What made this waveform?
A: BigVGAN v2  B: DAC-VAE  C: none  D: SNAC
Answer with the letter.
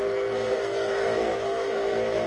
D